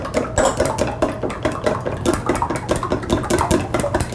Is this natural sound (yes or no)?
yes